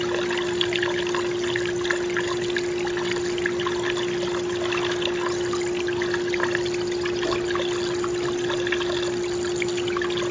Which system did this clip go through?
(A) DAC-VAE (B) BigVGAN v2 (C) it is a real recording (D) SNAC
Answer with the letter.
C